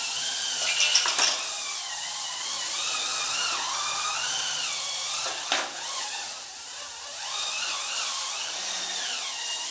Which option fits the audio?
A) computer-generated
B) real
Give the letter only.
B